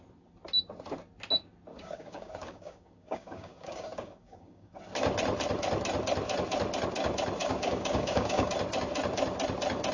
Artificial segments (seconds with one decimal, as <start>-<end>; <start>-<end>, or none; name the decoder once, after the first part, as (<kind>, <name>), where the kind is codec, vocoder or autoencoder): 1.7-4.8 (codec, DAC); 7.4-8.5